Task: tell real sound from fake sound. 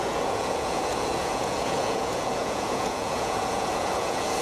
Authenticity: fake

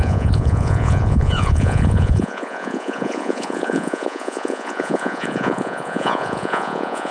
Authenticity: fake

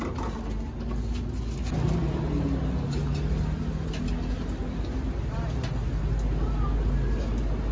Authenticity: real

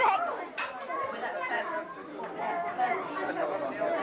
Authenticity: real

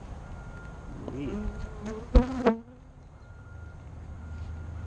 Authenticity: real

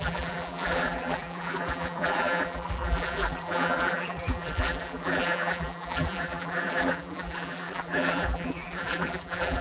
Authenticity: fake